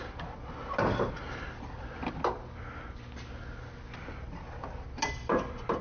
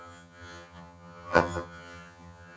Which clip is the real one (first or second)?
first